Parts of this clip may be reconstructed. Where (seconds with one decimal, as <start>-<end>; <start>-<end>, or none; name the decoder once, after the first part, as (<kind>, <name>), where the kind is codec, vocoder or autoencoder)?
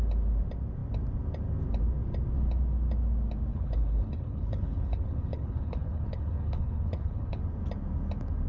3.5-7.4 (codec, HILCodec)